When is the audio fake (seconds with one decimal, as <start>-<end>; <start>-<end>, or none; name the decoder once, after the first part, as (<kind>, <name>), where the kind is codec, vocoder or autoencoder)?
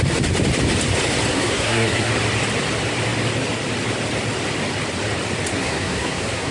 1.3-2.1 (codec, SNAC); 5.5-6.5